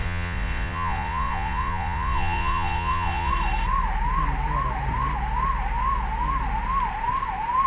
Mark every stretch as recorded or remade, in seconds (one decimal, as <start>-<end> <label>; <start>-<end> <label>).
0.0-3.3 remade; 3.3-7.7 recorded